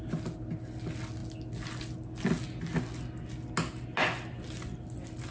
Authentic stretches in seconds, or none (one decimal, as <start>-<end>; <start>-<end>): 0.0-5.3

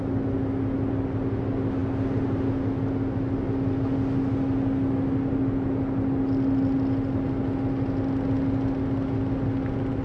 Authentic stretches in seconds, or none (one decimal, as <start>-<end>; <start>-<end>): 0.0-10.0

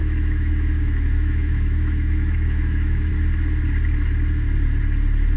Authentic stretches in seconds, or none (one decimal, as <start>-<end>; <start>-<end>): 3.1-5.4

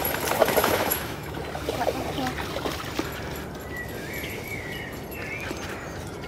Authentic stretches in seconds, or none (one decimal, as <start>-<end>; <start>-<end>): 0.0-0.4; 1.4-6.3

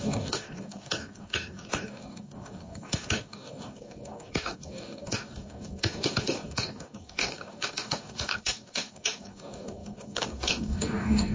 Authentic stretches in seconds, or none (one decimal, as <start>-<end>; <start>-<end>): none

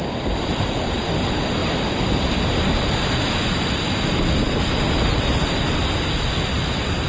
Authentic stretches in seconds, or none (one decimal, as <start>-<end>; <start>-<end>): 0.0-7.1